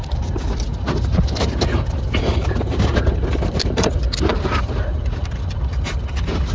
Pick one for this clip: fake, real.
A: real